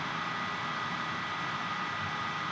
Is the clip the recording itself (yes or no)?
yes